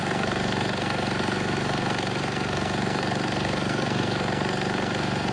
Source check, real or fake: fake